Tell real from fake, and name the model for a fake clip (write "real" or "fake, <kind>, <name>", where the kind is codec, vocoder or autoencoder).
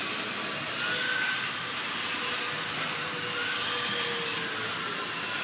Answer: real